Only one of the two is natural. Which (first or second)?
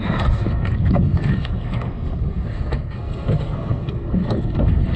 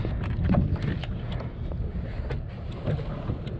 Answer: second